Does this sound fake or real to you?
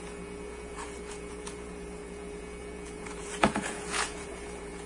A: fake